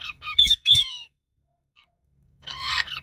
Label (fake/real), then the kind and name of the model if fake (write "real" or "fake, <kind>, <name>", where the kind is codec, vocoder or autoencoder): fake, codec, SNAC